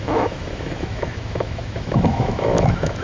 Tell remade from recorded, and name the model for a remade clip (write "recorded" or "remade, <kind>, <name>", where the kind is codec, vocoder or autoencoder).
remade, autoencoder, DAC-VAE